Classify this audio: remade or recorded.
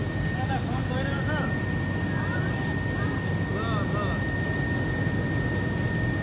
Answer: recorded